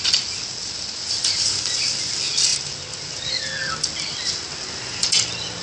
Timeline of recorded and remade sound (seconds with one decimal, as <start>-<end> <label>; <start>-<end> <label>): 0.0-0.6 recorded; 0.6-2.1 remade; 2.1-5.6 recorded